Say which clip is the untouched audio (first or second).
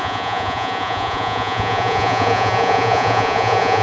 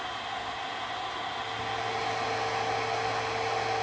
second